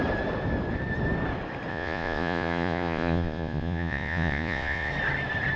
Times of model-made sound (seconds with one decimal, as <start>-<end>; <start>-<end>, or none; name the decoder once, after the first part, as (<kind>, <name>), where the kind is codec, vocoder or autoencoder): 1.7-4.9 (vocoder, Vocos)